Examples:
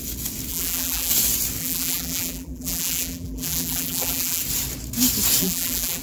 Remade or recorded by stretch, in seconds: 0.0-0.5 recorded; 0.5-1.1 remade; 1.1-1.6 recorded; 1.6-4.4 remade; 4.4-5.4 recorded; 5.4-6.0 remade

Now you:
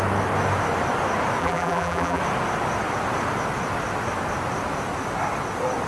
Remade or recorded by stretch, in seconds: 0.0-1.4 recorded; 1.4-2.2 remade; 2.2-5.9 recorded

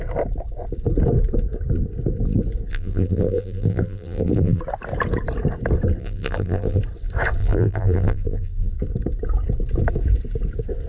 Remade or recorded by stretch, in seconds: 0.0-2.7 recorded; 2.7-4.6 remade; 4.6-6.0 recorded; 6.0-6.8 remade; 6.8-7.4 recorded; 7.4-8.7 remade; 8.7-10.9 recorded

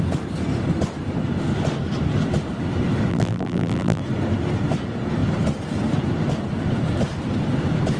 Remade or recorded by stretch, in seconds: 0.0-3.1 recorded; 3.1-4.0 remade; 4.0-8.0 recorded

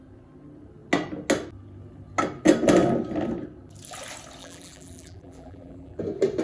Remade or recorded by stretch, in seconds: 0.0-4.4 recorded; 4.4-6.0 remade; 6.0-6.4 recorded

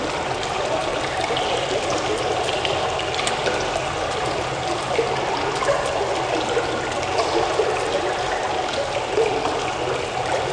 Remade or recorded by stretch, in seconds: 0.0-10.5 recorded

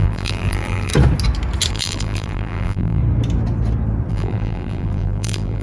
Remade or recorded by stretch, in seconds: 0.0-0.9 remade; 0.9-1.7 recorded; 1.7-3.0 remade; 3.0-4.1 recorded; 4.1-5.6 remade

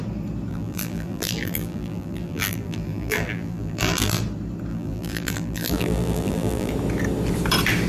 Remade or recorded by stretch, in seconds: 0.0-0.5 recorded; 0.5-4.2 remade; 4.2-4.7 recorded; 4.7-6.7 remade; 6.7-7.9 recorded